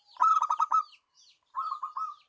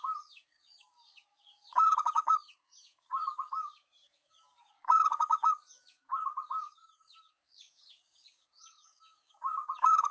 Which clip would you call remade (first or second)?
second